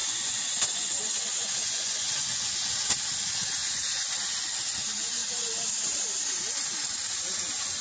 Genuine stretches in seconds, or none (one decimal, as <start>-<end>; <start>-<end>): 2.5-3.6; 4.1-7.8

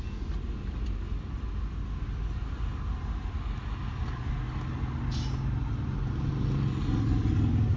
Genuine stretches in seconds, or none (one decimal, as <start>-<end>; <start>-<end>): 0.0-7.8

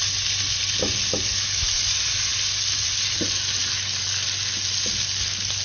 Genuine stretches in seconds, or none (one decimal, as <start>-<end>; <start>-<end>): 0.0-5.6

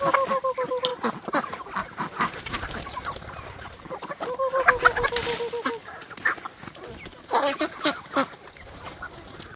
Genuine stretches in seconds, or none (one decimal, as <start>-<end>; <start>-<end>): 0.0-9.6

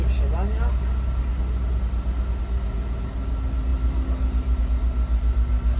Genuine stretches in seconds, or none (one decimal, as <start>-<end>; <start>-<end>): 0.0-5.8

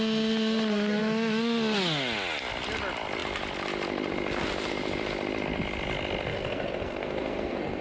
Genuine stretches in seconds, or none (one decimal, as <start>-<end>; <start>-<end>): 0.0-6.3

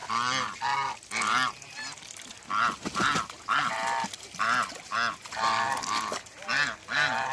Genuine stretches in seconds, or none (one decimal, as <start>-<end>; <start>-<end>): 0.0-7.3

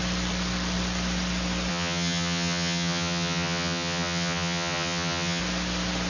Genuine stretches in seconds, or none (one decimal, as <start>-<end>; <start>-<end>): 0.0-1.7; 5.4-6.1